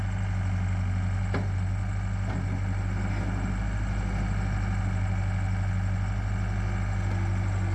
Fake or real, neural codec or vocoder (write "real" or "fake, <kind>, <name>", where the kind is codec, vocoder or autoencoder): real